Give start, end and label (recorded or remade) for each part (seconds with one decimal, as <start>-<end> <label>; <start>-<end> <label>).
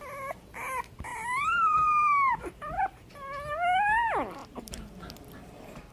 0.0-1.1 recorded; 1.1-2.8 remade; 2.8-4.4 recorded; 4.4-5.0 remade; 5.0-5.9 recorded